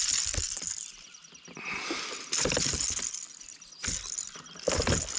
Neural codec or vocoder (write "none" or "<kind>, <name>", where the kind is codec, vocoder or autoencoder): none